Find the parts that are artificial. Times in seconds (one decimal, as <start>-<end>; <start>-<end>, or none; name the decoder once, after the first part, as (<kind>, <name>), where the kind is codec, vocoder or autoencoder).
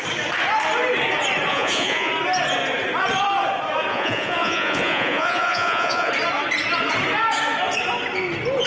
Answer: 1.5-2.1 (vocoder, Vocos); 3.9-6.1